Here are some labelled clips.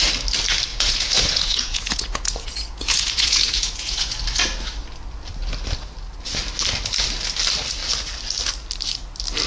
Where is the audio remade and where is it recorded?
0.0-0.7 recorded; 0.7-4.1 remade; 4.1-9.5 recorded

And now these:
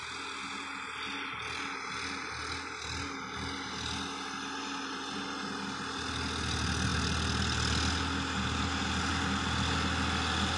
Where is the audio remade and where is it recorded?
0.0-10.6 recorded

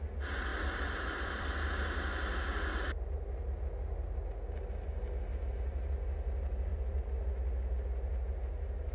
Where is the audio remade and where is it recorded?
0.0-0.5 recorded; 0.5-1.5 remade; 1.5-8.9 recorded

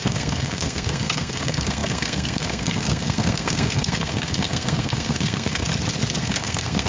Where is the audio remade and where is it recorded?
0.0-5.7 remade; 5.7-6.2 recorded; 6.2-6.9 remade

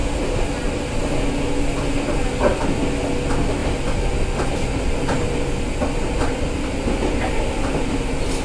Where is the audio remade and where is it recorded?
0.0-8.4 recorded

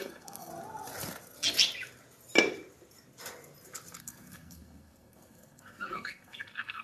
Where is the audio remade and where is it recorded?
0.0-0.5 remade; 0.5-4.0 recorded; 4.0-6.8 remade